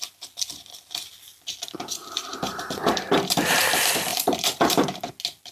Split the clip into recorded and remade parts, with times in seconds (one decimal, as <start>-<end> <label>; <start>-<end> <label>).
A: 0.0-2.0 recorded; 2.0-2.9 remade; 2.9-4.1 recorded; 4.1-5.1 remade; 5.1-5.5 recorded